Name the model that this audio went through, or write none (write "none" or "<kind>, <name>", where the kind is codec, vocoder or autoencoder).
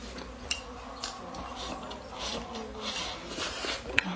none